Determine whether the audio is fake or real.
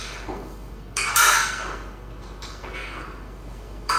fake